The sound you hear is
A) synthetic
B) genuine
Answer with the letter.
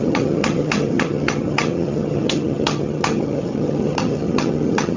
A